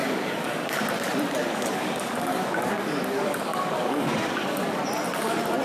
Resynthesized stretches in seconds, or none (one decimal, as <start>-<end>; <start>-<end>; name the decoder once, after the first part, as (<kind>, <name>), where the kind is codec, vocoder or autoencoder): 0.0-0.8 (codec, DAC); 1.4-4.8